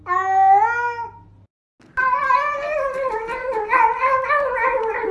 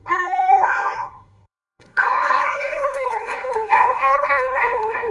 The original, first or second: first